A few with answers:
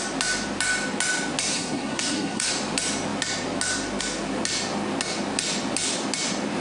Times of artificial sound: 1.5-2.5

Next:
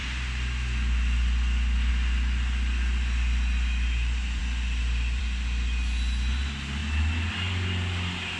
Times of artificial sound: none

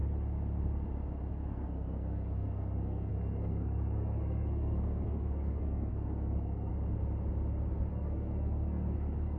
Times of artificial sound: 1.3-6.7; 7.9-9.4

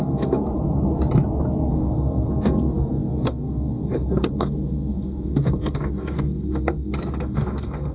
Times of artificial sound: 0.0-0.4; 1.7-7.9

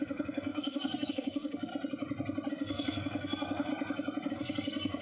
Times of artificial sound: 0.0-1.7; 2.5-3.7; 4.3-5.0